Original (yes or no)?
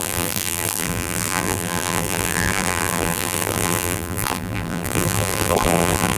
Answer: no